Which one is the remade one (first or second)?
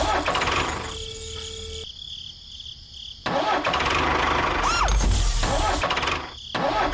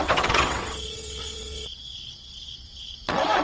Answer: second